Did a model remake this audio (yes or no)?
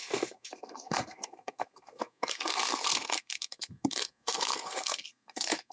yes